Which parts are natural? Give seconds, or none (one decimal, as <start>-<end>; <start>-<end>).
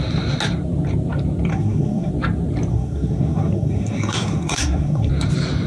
0.0-1.5; 2.1-2.7; 5.1-5.7